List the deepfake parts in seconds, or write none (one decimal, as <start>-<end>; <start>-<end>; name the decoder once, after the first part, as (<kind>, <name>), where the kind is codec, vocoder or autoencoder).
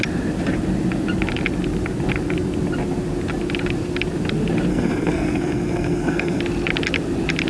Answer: 4.7-6.4 (codec, SNAC)